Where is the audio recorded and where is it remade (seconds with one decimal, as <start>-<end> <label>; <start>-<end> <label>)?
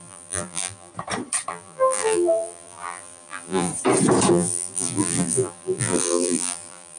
0.0-0.9 remade; 0.9-1.5 recorded; 1.5-3.7 remade; 3.7-4.3 recorded; 4.3-7.0 remade